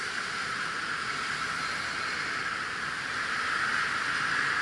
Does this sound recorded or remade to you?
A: recorded